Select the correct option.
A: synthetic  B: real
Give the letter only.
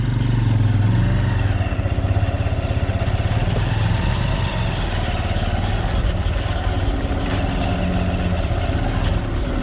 B